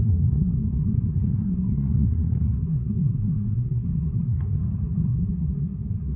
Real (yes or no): no